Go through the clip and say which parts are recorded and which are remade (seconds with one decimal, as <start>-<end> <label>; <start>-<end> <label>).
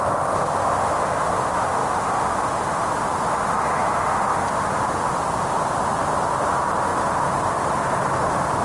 0.0-8.6 recorded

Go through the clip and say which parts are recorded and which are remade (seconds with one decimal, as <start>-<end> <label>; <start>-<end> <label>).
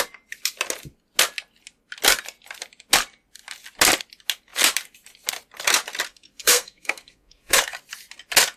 0.0-6.1 recorded; 6.1-7.8 remade; 7.8-8.6 recorded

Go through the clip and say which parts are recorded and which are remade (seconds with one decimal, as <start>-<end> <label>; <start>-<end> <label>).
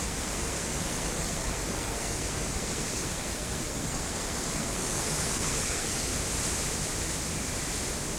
0.0-6.1 remade; 6.1-8.2 recorded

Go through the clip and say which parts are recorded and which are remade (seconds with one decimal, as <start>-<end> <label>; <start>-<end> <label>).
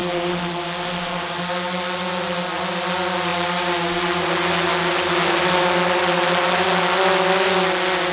0.0-8.1 recorded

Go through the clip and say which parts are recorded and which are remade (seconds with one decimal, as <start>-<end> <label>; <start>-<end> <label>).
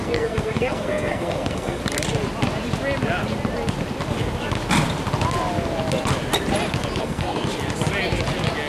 0.0-1.8 remade; 1.8-7.0 recorded; 7.0-7.5 remade; 7.5-8.7 recorded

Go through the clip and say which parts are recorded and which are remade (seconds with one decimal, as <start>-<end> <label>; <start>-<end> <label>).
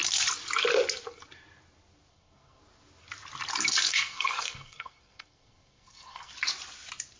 0.0-2.1 recorded; 2.1-2.6 remade; 2.6-3.9 recorded; 3.9-6.3 remade; 6.3-7.2 recorded